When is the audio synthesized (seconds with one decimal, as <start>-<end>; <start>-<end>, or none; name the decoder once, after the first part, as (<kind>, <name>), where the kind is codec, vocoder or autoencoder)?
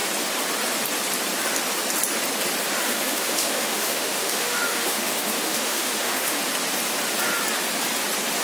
2.9-6.4 (autoencoder, DAC-VAE)